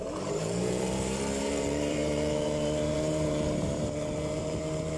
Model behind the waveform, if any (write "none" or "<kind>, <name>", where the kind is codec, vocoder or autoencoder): vocoder, BigVGAN v2